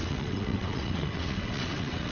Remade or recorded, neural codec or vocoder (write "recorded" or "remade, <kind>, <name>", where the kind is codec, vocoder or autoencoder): remade, vocoder, WaveNeXt